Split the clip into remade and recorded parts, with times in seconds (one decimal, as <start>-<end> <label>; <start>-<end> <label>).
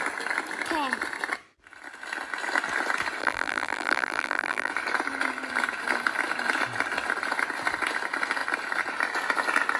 0.0-3.2 recorded; 3.2-4.7 remade; 4.7-9.8 recorded